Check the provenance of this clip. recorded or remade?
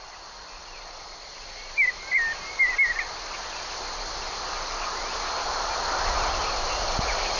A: recorded